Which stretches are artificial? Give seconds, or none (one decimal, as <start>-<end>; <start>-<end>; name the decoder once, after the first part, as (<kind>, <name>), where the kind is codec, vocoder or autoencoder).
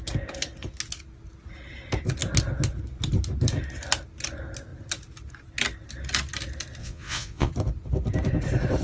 6.8-7.5 (vocoder, Vocos)